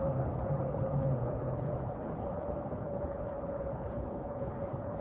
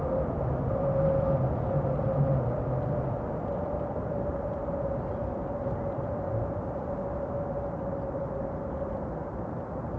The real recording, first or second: second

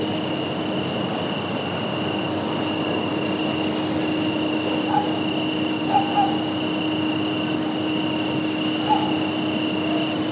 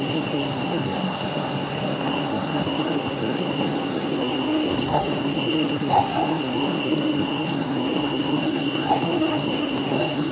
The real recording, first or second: first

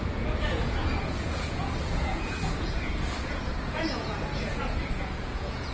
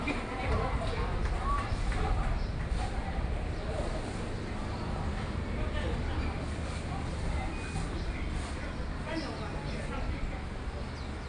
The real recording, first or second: second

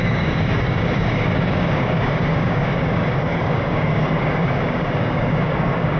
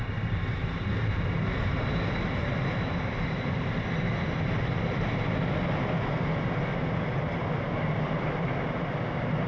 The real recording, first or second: second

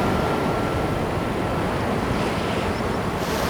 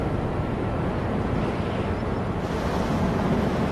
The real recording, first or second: second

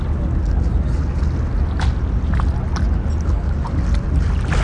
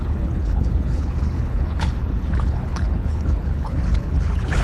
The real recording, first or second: first